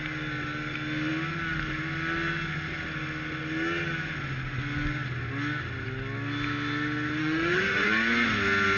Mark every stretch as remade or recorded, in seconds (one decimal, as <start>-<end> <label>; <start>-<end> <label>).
0.0-7.2 recorded; 7.2-7.9 remade; 7.9-8.8 recorded